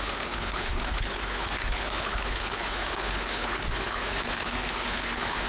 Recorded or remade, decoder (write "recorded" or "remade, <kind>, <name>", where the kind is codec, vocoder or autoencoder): remade, codec, HILCodec